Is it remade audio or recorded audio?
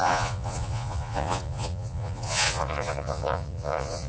remade